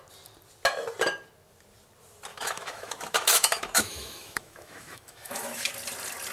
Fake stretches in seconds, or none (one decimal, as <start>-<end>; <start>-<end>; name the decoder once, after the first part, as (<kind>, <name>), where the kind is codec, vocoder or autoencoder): 2.3-5.7 (autoencoder, DAC-VAE)